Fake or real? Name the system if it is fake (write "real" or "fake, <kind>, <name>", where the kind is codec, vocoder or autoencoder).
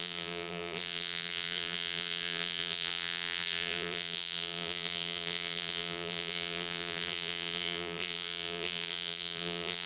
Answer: fake, vocoder, BigVGAN v2